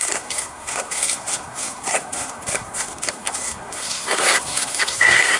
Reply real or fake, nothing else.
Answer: fake